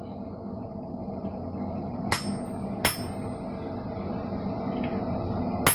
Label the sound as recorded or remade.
recorded